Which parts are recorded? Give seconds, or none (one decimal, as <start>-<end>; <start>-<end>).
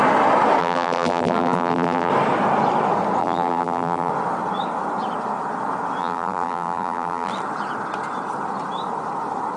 0.0-0.6; 2.1-3.2; 4.1-6.0; 7.3-9.6